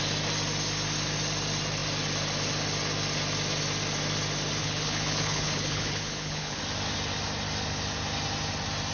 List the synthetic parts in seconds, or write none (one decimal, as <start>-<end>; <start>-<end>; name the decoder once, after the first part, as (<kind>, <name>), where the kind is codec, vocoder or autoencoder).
4.6-6.6 (codec, HILCodec)